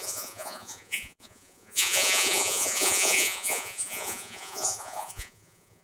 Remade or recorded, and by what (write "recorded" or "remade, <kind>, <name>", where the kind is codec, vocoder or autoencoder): remade, vocoder, Vocos